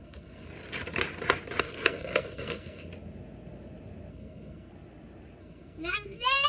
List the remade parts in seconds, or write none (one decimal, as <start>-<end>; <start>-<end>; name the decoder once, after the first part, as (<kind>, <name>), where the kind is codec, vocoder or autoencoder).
0.0-0.5 (codec, SNAC); 1.6-2.9; 4.1-4.7; 5.4-6.5